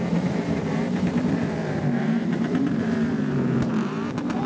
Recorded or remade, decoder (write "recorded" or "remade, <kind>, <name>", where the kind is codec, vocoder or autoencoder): remade, vocoder, BigVGAN v2